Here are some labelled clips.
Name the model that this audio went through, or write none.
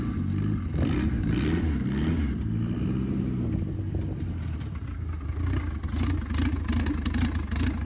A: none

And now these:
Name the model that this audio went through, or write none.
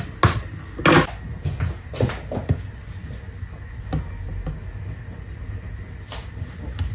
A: none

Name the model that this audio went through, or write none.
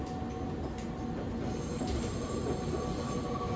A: none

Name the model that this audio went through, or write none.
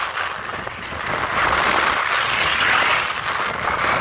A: none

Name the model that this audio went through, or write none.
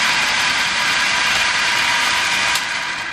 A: vocoder, BigVGAN v2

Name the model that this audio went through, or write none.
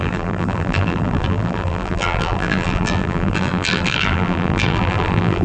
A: vocoder, BigVGAN v2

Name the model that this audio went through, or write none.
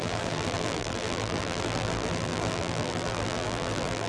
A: vocoder, BigVGAN v2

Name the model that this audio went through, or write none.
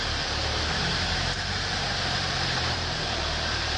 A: vocoder, BigVGAN v2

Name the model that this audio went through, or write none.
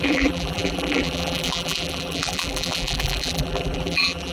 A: vocoder, BigVGAN v2